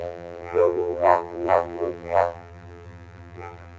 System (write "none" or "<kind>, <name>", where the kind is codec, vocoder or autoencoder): vocoder, BigVGAN v2